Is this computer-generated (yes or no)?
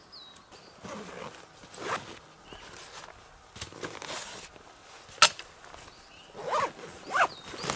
no